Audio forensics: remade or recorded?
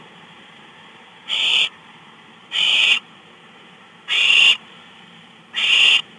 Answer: remade